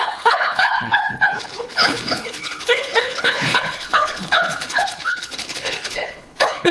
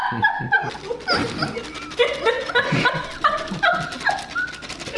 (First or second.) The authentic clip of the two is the second